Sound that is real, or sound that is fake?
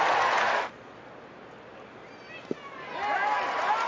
real